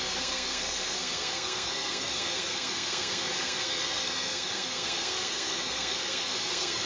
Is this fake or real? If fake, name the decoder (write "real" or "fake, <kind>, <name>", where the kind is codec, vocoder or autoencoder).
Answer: fake, codec, SNAC